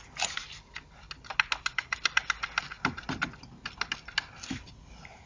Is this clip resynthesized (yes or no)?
no